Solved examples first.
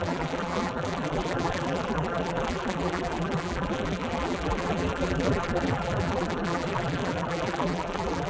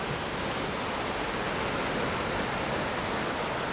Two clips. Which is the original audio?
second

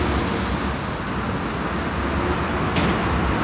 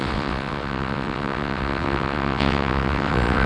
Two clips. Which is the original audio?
first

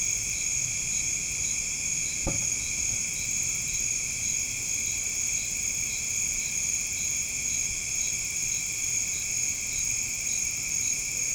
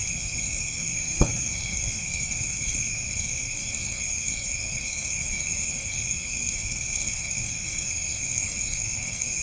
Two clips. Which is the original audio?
first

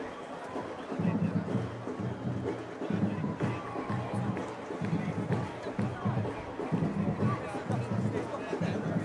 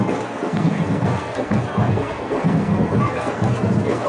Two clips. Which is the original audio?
first